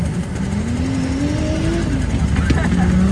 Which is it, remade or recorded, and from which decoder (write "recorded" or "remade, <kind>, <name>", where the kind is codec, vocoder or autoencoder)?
recorded